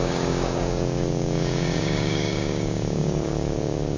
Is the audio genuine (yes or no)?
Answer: no